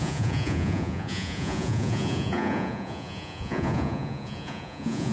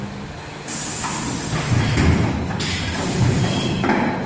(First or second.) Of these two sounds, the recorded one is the second